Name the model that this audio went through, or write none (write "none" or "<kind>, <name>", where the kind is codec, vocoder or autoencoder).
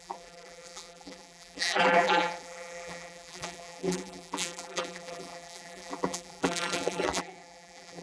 vocoder, BigVGAN v2